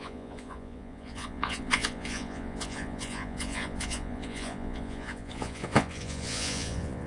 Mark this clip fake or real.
fake